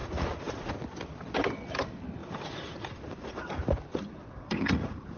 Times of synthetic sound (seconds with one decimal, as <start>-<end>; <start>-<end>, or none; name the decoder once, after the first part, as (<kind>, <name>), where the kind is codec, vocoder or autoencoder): 0.0-0.7 (vocoder, Vocos); 2.2-3.5; 3.9-5.2